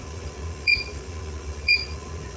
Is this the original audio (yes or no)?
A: no